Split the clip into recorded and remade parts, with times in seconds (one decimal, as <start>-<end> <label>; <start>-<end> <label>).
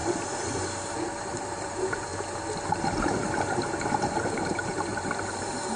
0.0-0.9 recorded; 0.9-2.1 remade; 2.1-2.9 recorded; 2.9-5.8 remade